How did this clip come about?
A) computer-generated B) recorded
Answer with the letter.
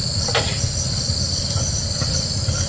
B